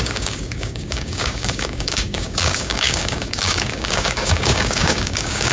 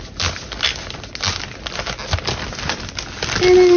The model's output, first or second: first